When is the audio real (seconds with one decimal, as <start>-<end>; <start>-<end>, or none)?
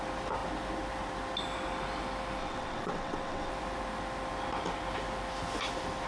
0.0-2.4; 3.5-6.1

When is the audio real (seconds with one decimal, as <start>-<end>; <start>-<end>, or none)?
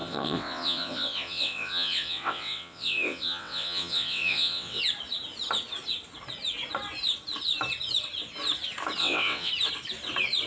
4.8-9.0; 9.5-10.5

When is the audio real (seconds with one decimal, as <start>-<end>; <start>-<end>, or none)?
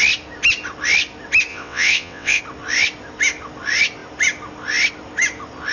0.0-1.5; 2.4-5.7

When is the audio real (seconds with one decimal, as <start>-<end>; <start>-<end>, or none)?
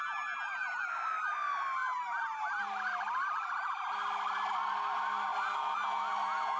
0.0-6.6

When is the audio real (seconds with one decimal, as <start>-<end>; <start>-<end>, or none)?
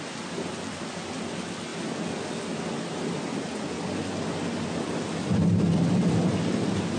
0.0-7.0